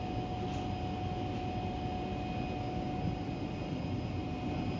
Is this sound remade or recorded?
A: recorded